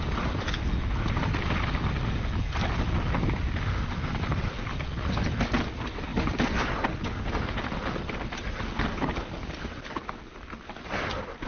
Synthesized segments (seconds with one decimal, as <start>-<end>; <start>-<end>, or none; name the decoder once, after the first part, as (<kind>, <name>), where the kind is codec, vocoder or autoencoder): none